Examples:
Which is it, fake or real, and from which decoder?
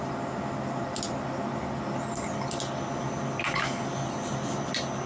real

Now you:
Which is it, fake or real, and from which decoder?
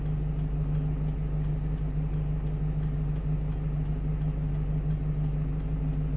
real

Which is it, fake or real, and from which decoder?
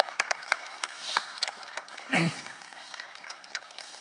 fake, codec, SNAC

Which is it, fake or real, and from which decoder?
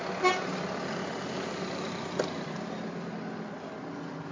real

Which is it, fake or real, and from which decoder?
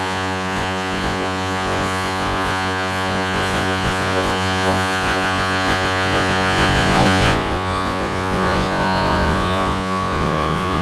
fake, vocoder, Vocos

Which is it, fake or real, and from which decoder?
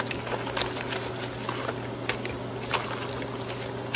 real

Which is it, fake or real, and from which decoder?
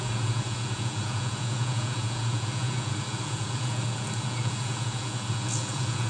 fake, vocoder, Vocos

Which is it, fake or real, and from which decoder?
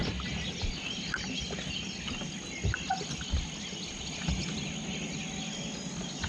real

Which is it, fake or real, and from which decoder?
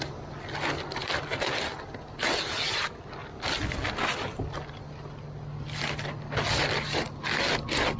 real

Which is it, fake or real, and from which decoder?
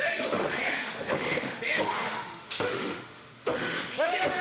fake, autoencoder, DAC-VAE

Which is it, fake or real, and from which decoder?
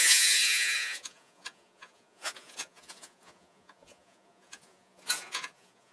fake, vocoder, Vocos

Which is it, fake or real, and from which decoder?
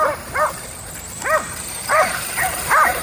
fake, vocoder, BigVGAN v2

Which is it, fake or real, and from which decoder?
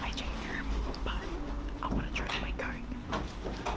real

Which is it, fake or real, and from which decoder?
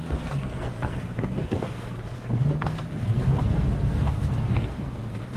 fake, codec, SNAC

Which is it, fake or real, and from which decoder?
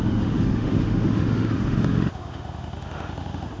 fake, autoencoder, DAC-VAE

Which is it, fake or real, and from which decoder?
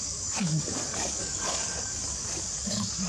fake, codec, DAC